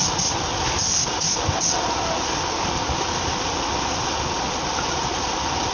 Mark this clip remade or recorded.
recorded